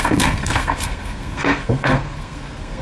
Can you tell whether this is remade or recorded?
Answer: remade